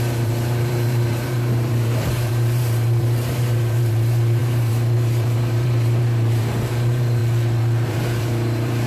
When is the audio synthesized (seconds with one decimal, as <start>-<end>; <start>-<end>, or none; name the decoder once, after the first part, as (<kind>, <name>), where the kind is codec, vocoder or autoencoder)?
0.0-7.2 (vocoder, BigVGAN v2); 7.9-8.9